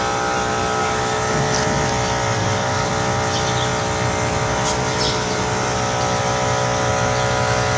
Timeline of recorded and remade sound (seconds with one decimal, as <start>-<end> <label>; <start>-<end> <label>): 0.0-0.8 recorded; 0.8-1.3 remade; 1.3-2.4 recorded; 2.4-2.9 remade; 2.9-7.8 recorded